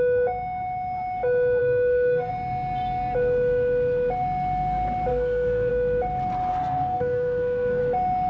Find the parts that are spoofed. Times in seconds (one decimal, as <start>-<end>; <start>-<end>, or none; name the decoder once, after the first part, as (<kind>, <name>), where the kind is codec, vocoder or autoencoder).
1.6-2.3 (codec, SNAC); 5.1-5.7; 6.5-7.8